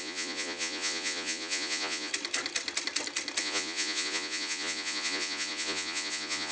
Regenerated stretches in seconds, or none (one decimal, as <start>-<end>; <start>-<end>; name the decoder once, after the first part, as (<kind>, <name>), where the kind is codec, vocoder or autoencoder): 0.0-2.1 (vocoder, Vocos); 3.4-6.5